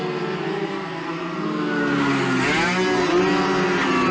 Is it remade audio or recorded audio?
recorded